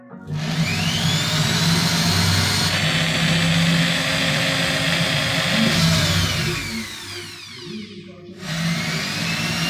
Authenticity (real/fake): real